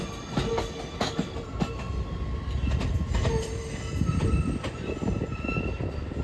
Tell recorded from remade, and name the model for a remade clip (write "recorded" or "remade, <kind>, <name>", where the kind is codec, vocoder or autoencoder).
recorded